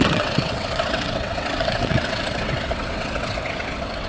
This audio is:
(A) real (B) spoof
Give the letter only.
B